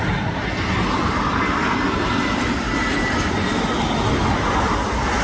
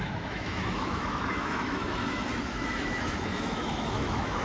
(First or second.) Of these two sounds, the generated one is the second